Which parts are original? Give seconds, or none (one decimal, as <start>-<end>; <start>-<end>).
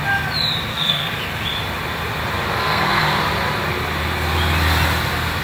0.0-0.7; 1.2-2.6; 3.2-5.4